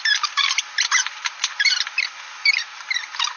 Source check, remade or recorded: recorded